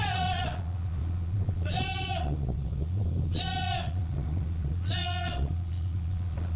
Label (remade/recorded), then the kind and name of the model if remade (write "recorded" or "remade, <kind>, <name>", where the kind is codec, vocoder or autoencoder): remade, vocoder, Vocos